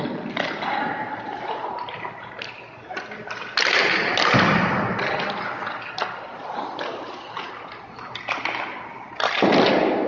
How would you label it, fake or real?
real